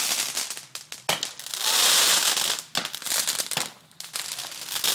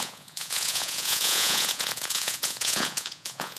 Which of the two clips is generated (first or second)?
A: second